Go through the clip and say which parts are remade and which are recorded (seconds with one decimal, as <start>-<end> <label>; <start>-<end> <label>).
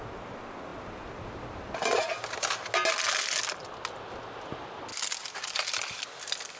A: 0.0-6.6 recorded